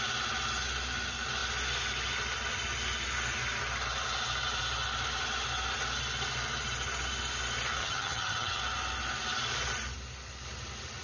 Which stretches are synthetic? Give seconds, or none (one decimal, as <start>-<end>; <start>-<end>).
7.8-8.6